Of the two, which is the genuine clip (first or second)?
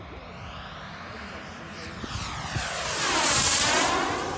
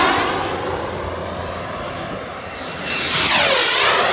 first